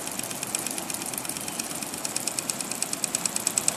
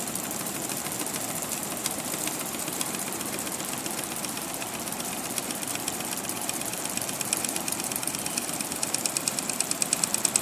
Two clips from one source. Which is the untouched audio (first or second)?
first